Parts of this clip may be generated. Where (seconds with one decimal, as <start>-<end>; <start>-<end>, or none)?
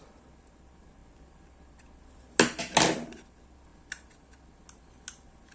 none